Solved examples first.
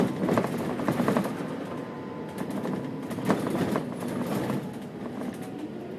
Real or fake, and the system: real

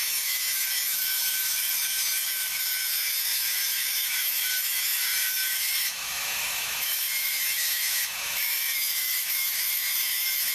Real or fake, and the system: fake, autoencoder, DAC-VAE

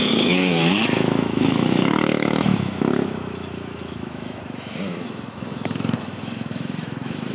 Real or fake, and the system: fake, autoencoder, DAC-VAE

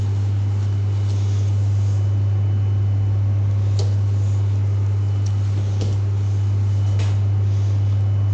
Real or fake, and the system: real